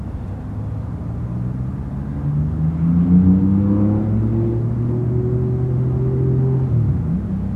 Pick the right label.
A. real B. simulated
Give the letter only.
A